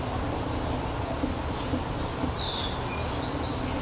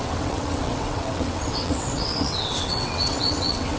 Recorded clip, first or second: first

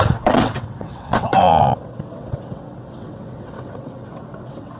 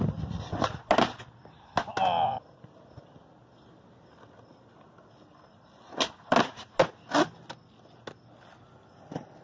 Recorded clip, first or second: second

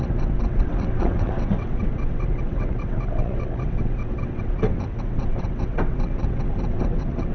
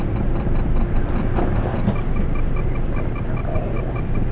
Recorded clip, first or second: second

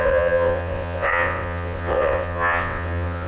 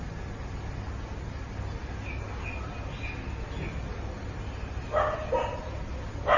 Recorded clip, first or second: second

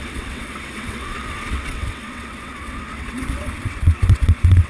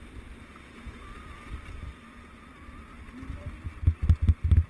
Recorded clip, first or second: second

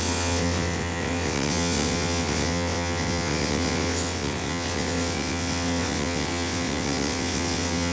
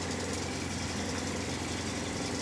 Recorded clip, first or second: second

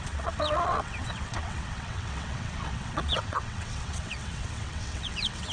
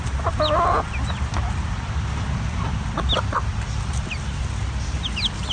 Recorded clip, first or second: second